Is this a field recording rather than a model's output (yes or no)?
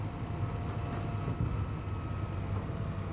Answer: yes